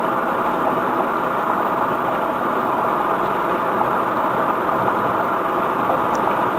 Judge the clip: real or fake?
real